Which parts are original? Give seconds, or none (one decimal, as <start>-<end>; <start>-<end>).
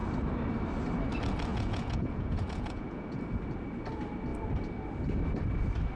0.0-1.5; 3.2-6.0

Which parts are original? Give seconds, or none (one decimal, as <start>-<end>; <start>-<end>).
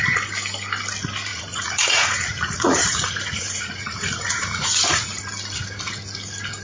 0.0-1.3; 5.2-6.6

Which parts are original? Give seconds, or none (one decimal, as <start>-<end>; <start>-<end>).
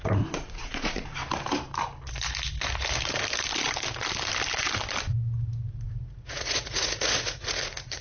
1.2-6.0